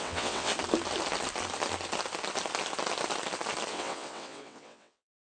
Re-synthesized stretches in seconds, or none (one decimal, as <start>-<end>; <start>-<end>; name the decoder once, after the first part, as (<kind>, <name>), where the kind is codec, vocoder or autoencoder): 0.0-0.5 (vocoder, WaveNeXt); 3.7-5.4